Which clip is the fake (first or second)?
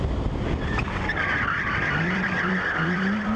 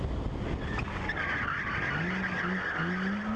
first